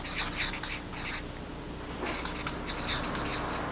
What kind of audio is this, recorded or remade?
recorded